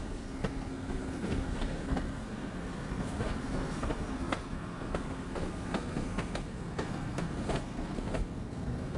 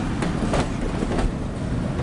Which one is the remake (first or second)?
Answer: first